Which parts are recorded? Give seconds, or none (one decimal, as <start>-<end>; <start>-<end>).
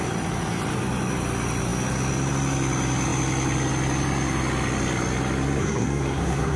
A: 0.0-5.6